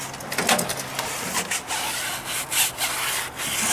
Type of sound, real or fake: real